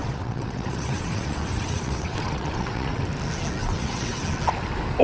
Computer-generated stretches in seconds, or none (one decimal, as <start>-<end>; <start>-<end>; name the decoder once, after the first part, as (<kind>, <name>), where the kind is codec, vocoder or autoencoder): 0.0-3.0 (vocoder, WaveNeXt); 3.6-4.2